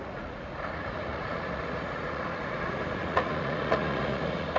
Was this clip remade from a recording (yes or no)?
yes